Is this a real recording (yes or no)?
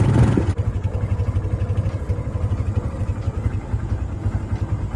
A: yes